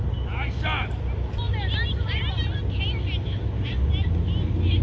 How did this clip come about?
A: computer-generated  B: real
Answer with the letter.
B